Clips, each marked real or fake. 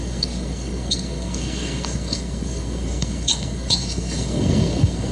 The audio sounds fake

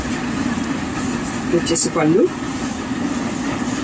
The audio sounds real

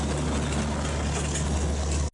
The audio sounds real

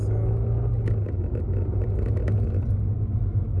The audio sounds real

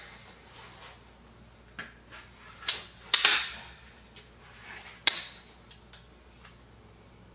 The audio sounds real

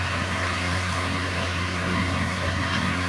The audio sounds fake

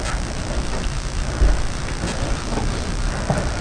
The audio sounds real